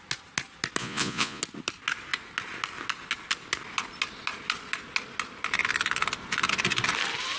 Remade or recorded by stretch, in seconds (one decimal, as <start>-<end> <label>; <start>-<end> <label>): 0.0-0.8 recorded; 0.8-1.4 remade; 1.4-7.4 recorded